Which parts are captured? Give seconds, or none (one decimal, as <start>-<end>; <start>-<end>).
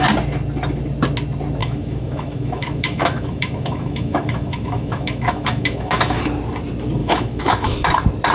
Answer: 0.0-1.6; 6.2-7.0; 7.9-8.3